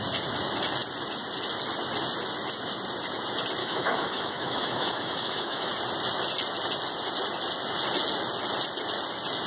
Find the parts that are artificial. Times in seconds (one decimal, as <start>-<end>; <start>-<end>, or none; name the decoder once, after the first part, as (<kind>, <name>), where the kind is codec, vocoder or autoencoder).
3.6-5.7 (autoencoder, DAC-VAE)